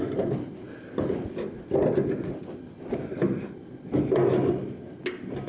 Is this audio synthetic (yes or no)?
no